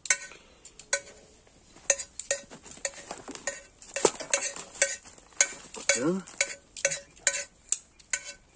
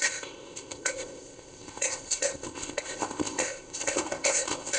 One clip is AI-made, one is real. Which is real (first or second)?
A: first